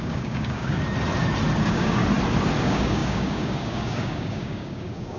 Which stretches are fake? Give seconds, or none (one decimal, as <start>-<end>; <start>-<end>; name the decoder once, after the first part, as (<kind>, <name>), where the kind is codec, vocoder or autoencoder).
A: 0.0-0.8 (codec, DAC); 1.6-2.0; 2.6-5.2